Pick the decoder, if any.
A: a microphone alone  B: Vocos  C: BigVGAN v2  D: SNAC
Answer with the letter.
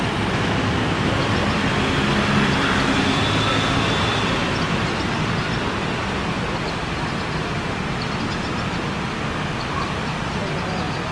A